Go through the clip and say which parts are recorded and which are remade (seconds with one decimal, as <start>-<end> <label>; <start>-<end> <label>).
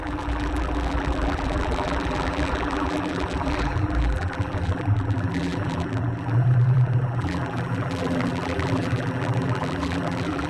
0.0-10.5 remade